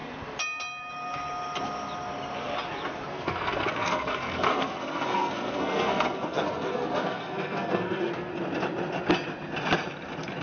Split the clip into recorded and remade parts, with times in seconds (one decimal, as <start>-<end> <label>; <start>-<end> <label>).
0.0-3.1 recorded; 3.1-8.3 remade; 8.3-10.4 recorded